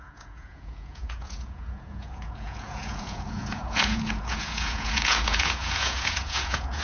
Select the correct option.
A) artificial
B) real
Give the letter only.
A